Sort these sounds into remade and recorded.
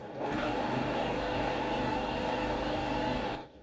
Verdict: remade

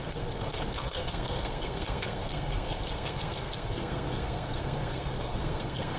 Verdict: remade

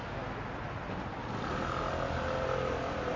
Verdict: recorded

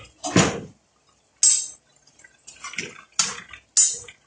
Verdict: recorded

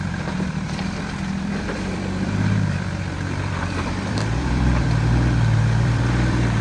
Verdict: remade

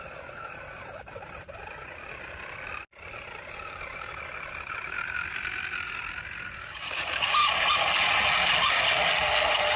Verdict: recorded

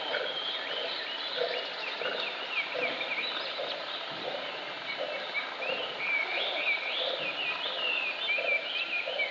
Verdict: recorded